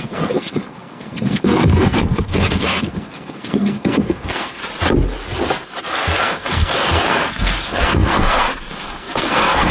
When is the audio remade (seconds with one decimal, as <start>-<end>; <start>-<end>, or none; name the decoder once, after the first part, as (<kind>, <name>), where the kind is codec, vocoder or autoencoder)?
0.0-4.6 (codec, SNAC); 5.8-9.7